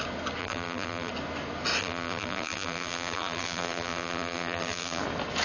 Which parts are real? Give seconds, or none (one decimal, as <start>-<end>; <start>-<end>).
0.0-0.4; 1.1-1.8; 5.0-5.4